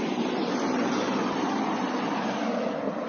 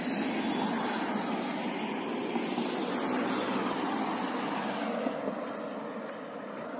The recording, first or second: second